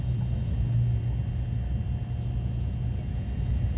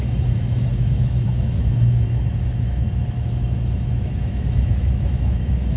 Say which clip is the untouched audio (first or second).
first